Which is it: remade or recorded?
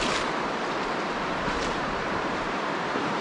remade